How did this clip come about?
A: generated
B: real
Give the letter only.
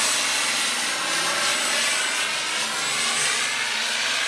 B